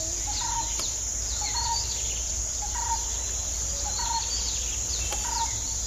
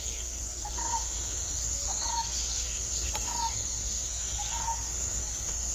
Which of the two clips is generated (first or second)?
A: second